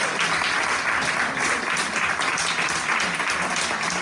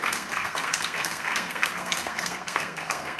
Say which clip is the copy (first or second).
second